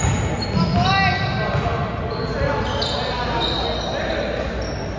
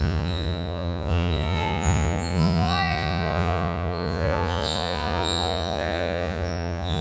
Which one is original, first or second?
first